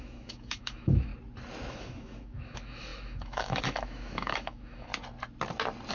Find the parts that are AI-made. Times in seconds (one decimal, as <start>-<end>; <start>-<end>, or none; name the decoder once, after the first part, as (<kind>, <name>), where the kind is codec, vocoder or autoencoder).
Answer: 0.0-1.1 (autoencoder, DAC-VAE); 1.7-4.9

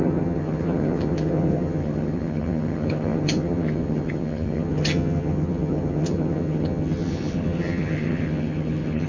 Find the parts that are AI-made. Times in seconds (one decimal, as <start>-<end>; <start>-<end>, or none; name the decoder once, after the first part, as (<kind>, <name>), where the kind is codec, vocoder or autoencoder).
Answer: 0.0-9.1 (vocoder, HiFi-GAN)

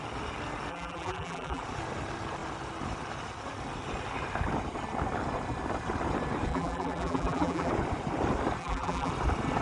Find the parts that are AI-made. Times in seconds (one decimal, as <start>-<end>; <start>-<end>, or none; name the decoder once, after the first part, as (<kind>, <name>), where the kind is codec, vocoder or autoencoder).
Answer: 0.7-1.6 (vocoder, BigVGAN v2); 6.5-7.7; 8.6-9.1

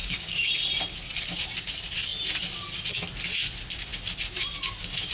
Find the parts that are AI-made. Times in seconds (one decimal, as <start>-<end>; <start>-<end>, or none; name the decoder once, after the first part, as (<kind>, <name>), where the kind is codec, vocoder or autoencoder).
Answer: 0.0-0.5 (codec, DAC)